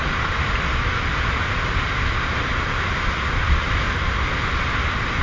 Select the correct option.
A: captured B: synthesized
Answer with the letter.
A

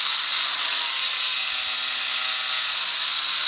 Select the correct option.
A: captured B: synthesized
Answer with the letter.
A